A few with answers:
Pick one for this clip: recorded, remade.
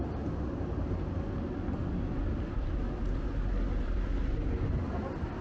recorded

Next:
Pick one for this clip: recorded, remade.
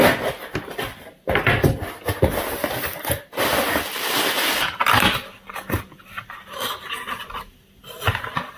recorded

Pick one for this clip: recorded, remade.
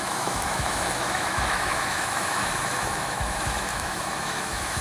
remade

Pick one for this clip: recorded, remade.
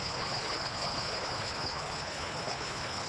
remade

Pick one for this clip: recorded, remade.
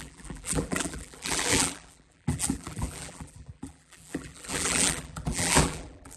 remade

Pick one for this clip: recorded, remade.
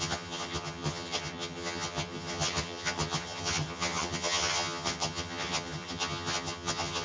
remade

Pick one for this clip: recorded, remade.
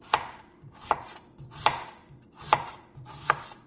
recorded